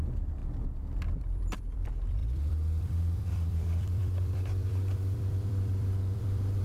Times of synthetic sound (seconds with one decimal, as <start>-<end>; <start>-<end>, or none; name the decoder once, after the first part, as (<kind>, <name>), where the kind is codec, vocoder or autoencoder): 0.0-0.4 (vocoder, BigVGAN v2); 1.2-6.6